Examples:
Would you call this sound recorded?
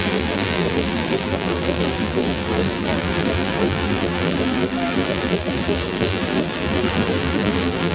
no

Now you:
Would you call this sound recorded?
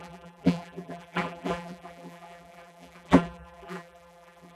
no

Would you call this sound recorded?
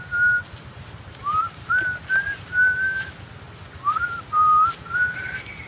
yes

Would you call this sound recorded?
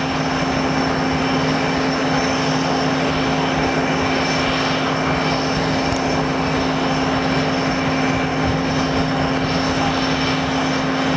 yes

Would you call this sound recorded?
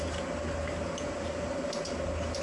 yes